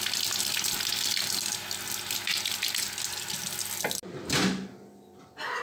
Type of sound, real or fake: real